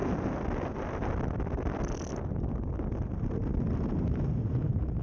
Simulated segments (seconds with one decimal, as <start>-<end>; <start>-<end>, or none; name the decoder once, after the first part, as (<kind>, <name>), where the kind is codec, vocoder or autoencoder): 0.0-2.1 (vocoder, BigVGAN v2)